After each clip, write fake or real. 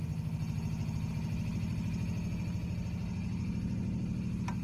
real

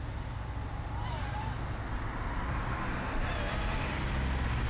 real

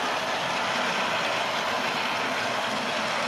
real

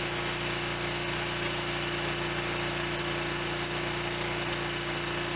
real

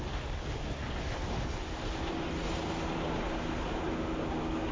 real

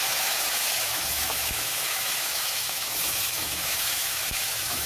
fake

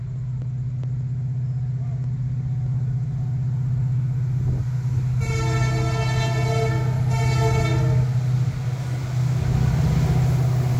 real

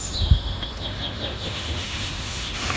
fake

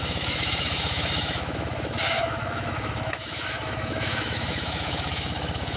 fake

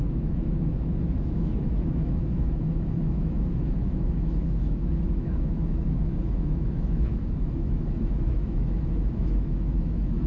fake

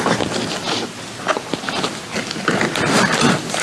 real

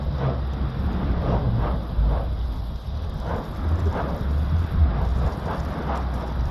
real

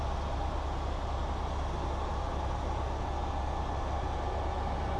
real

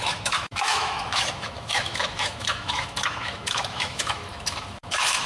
fake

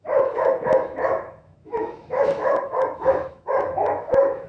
fake